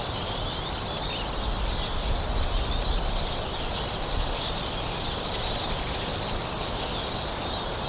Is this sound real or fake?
real